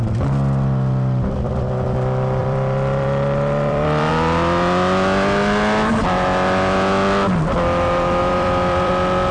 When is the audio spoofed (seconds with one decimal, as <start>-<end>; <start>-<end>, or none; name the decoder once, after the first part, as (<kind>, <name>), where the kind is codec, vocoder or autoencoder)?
2.4-4.1 (vocoder, BigVGAN v2); 8.2-8.9